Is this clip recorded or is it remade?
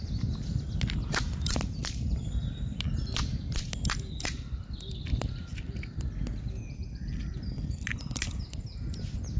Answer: recorded